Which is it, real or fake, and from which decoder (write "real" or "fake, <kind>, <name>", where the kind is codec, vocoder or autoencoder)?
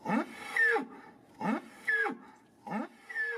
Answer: real